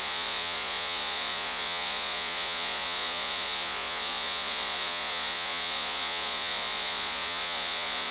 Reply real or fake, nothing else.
fake